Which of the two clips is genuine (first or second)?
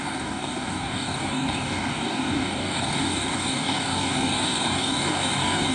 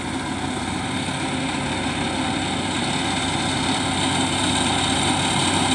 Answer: second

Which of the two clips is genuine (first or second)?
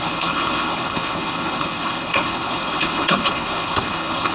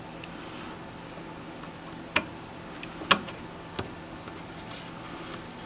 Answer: second